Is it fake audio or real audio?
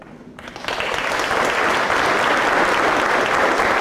real